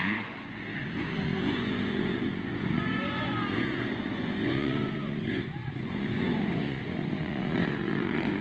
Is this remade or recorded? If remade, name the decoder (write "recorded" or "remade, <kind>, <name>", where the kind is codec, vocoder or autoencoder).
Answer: remade, vocoder, Vocos